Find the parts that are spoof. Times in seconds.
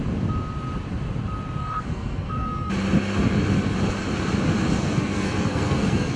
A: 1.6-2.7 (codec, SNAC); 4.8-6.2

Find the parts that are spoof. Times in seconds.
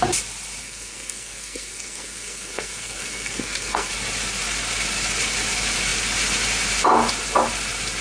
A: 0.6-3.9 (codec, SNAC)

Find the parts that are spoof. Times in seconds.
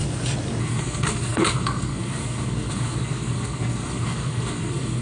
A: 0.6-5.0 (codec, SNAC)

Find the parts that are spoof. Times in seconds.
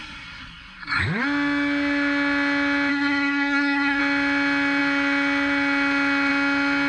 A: 0.0-1.0 (codec, SNAC); 2.9-4.0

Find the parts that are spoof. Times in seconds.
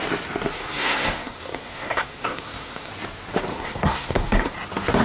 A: 0.5-2.9 (codec, SNAC); 3.5-4.5